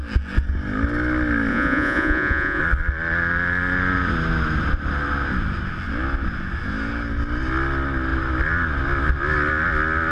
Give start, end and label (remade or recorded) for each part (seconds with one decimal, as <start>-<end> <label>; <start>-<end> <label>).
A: 0.0-1.5 recorded; 1.5-2.6 remade; 2.6-10.1 recorded

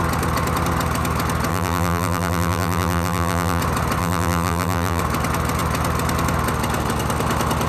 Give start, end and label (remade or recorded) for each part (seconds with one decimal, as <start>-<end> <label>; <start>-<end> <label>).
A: 0.0-1.5 recorded; 1.5-3.6 remade; 3.6-4.0 recorded; 4.0-5.0 remade; 5.0-7.7 recorded

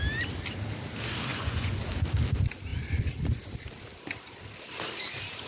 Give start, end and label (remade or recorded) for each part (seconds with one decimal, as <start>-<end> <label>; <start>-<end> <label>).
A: 0.0-1.3 recorded; 1.3-1.8 remade; 1.8-5.5 recorded

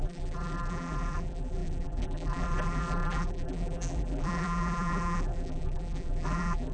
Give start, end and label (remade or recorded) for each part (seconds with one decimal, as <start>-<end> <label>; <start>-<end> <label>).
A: 0.0-6.7 remade

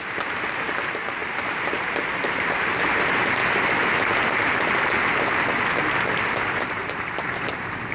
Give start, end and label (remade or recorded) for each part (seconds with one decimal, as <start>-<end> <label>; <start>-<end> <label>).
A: 0.0-3.4 remade; 3.4-6.4 recorded; 6.4-7.9 remade

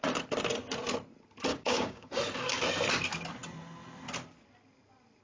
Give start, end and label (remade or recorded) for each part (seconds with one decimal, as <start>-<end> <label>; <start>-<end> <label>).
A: 0.0-1.5 recorded; 1.5-2.1 remade; 2.1-5.2 recorded

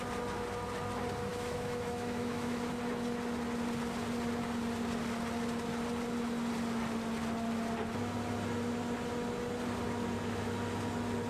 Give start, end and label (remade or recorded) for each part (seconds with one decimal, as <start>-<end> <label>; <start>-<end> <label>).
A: 0.0-1.3 recorded; 1.3-2.7 remade; 2.7-11.3 recorded